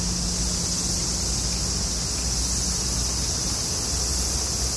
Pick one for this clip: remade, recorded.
recorded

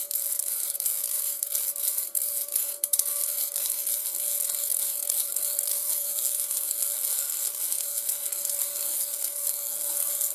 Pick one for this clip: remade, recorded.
remade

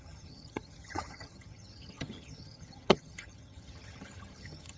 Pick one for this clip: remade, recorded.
remade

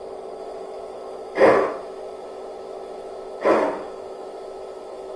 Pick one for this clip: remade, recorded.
remade